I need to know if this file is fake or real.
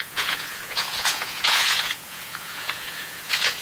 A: fake